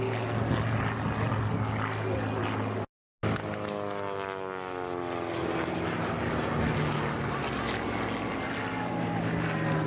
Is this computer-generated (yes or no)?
no